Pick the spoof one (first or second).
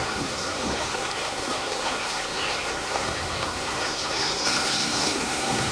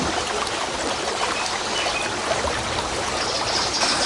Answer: first